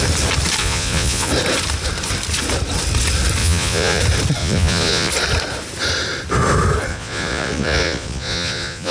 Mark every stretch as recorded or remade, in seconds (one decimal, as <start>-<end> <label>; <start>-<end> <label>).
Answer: 0.0-0.6 recorded; 0.6-1.3 remade; 1.3-3.4 recorded; 3.4-4.0 remade; 4.0-4.4 recorded; 4.4-5.1 remade; 5.1-6.9 recorded; 6.9-8.9 remade

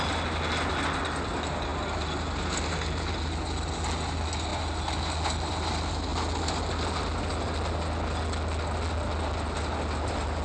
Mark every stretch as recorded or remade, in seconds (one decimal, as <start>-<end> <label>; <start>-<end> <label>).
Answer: 0.0-10.4 recorded

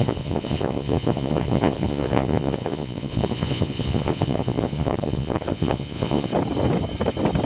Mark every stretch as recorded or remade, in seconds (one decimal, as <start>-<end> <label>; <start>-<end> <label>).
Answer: 0.0-6.3 remade; 6.3-7.5 recorded

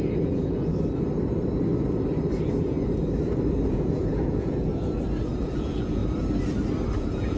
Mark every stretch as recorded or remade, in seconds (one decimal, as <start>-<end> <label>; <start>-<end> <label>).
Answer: 0.0-0.7 remade; 0.7-3.7 recorded; 3.7-4.7 remade; 4.7-5.4 recorded; 5.4-6.0 remade; 6.0-7.0 recorded; 7.0-7.4 remade

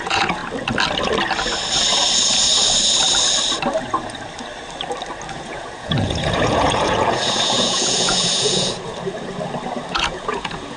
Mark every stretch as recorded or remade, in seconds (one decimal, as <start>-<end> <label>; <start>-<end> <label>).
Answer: 0.0-0.4 remade; 0.4-5.3 recorded; 5.3-8.9 remade; 8.9-9.9 recorded; 9.9-10.8 remade

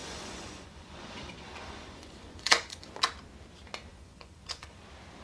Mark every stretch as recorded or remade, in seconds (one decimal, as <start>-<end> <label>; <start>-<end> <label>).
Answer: 0.0-2.8 remade; 2.8-3.9 recorded; 3.9-4.8 remade; 4.8-5.2 recorded

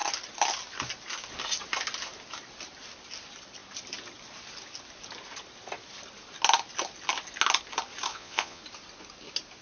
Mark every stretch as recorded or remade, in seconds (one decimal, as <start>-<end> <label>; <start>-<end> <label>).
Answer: 0.0-8.1 recorded; 8.1-8.6 remade; 8.6-9.6 recorded

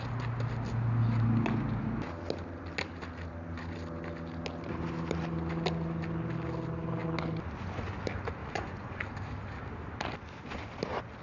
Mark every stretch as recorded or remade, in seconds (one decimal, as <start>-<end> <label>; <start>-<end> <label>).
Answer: 0.0-8.4 recorded; 8.4-9.0 remade; 9.0-11.2 recorded